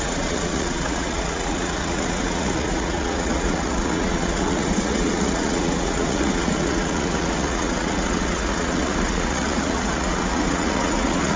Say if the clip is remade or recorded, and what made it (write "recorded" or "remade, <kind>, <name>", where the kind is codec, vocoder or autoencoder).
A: remade, vocoder, Vocos